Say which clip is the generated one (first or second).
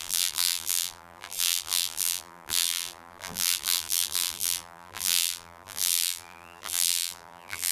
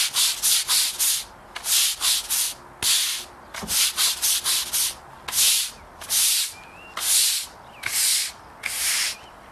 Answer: first